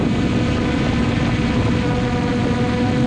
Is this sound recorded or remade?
recorded